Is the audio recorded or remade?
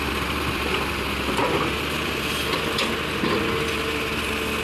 recorded